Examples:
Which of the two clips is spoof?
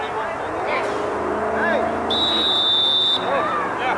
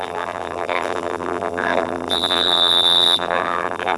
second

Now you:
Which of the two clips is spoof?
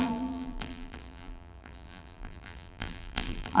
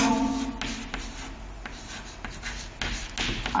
first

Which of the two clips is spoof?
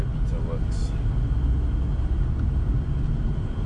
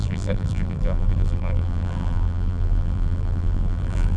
second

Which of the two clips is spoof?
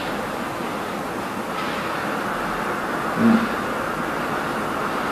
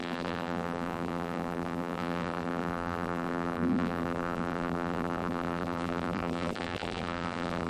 second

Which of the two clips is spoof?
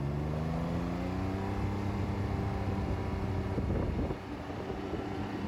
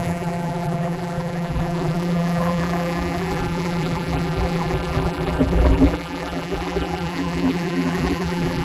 second